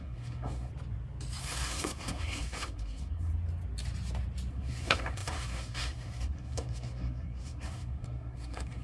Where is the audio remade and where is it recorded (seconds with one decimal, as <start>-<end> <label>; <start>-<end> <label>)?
0.0-0.7 remade; 0.7-1.4 recorded; 1.4-3.3 remade; 3.3-4.5 recorded; 4.5-8.8 remade